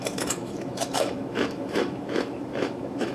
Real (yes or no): no